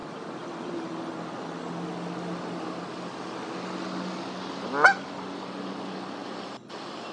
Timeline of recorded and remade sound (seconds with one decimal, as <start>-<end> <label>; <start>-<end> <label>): 0.0-7.1 recorded